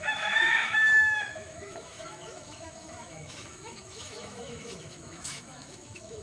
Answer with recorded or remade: remade